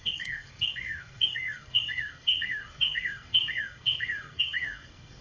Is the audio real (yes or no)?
no